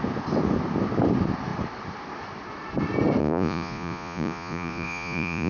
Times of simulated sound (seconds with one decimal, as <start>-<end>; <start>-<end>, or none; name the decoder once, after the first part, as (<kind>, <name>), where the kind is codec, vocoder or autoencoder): 3.2-5.5 (vocoder, Vocos)